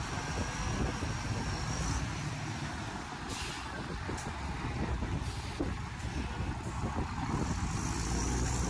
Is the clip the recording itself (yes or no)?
yes